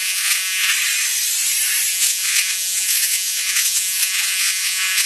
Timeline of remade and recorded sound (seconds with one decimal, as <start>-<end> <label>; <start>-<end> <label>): 0.0-0.7 remade; 0.7-1.9 recorded; 1.9-5.1 remade